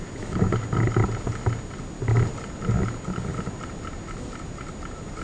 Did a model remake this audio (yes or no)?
no